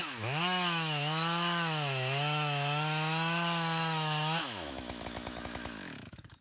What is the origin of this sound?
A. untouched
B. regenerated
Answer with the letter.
B